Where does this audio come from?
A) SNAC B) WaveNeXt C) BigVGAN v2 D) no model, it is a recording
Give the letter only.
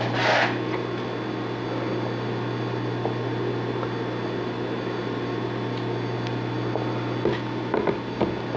D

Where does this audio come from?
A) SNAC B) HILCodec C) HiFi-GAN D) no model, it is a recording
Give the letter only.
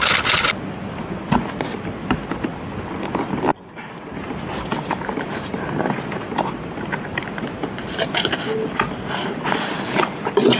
D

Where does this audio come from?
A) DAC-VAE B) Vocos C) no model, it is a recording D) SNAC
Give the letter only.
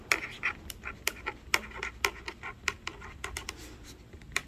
C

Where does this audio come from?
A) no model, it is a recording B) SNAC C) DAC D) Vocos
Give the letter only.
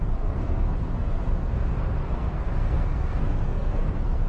B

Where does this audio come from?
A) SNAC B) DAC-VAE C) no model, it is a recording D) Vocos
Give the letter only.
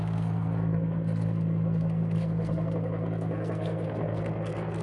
A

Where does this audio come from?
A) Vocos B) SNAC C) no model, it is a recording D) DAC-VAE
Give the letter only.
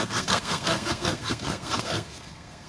B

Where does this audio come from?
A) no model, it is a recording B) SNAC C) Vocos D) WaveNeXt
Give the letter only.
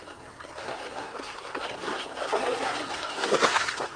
B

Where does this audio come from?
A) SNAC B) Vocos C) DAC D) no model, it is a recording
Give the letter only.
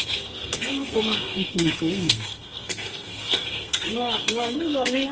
A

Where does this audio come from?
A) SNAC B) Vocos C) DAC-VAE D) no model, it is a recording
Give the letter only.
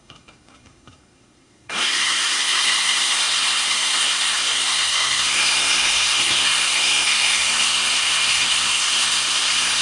A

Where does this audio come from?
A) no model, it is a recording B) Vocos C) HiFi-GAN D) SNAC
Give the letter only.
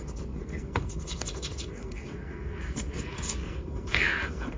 D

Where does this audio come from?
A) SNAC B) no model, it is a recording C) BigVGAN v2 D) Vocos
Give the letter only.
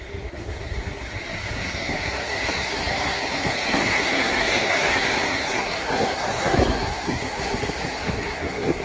A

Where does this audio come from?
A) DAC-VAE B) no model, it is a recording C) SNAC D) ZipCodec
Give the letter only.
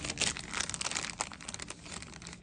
B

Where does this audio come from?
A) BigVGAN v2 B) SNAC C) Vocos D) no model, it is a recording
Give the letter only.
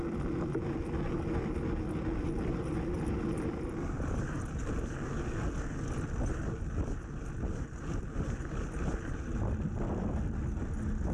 D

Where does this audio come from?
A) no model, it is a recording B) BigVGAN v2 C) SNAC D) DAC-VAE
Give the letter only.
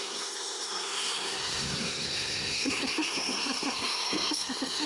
C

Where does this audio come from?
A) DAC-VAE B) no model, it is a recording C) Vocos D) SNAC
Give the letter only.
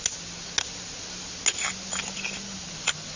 B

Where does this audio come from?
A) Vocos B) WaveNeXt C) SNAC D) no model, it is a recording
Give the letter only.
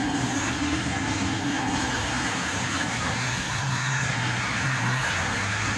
C